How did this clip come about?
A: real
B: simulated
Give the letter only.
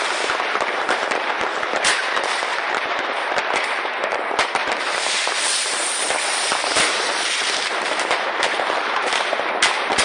B